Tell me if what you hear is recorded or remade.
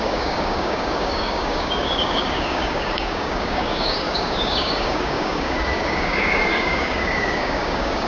remade